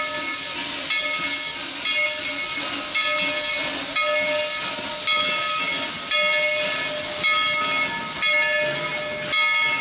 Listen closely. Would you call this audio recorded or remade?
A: recorded